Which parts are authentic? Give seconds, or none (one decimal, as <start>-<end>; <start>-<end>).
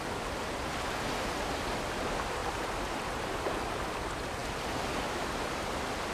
0.0-2.4; 3.3-6.1